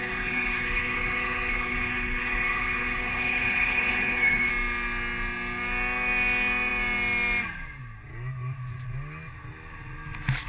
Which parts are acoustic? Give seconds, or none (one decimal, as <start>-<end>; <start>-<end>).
4.5-10.5